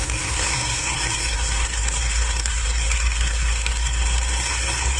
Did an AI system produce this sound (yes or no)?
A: yes